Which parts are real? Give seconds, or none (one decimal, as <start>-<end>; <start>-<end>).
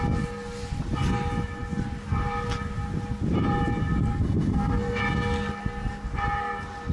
0.0-4.1; 5.0-6.9